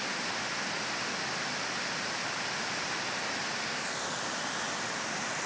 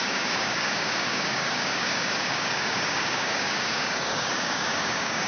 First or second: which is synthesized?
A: second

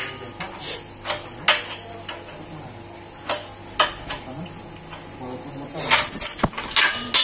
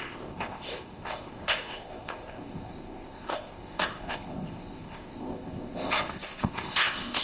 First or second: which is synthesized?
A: second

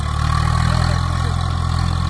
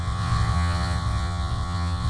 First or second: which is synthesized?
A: second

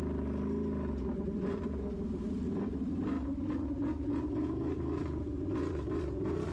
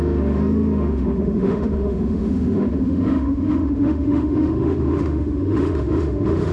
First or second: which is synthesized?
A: second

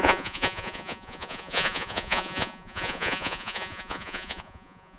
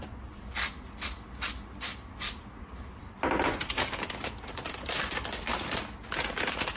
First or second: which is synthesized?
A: first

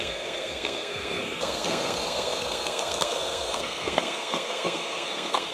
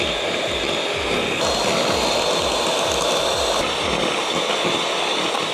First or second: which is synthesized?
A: first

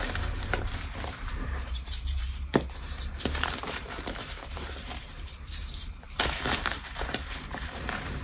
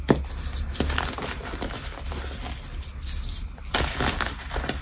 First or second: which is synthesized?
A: first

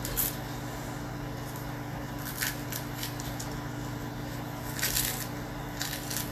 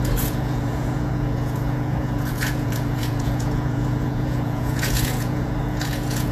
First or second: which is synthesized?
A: second